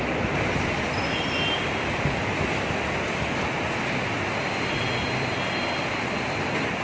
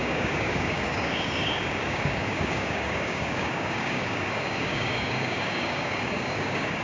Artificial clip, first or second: second